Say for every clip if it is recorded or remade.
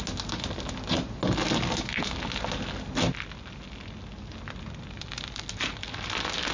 recorded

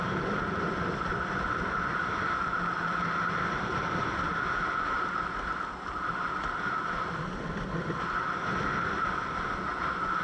recorded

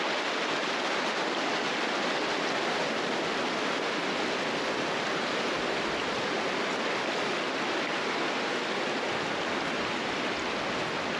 recorded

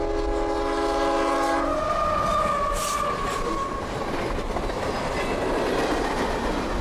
recorded